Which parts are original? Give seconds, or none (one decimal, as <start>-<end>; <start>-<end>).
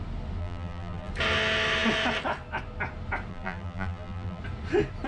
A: 0.0-0.4; 1.1-3.3; 4.4-5.1